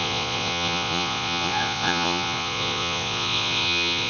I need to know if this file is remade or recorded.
remade